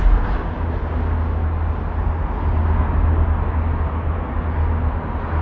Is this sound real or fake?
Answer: real